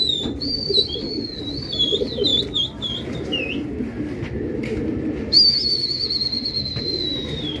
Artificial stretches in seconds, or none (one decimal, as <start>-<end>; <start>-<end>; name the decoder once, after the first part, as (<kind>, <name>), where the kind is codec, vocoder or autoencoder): none